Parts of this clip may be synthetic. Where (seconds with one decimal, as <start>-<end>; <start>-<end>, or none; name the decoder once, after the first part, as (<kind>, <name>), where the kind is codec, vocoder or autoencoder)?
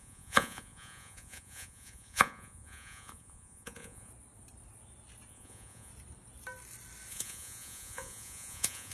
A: 0.0-4.1 (vocoder, Vocos); 5.3-5.9; 7.1-8.9